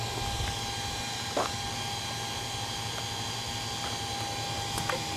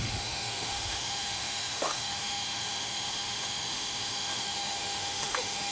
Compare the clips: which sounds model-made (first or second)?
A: second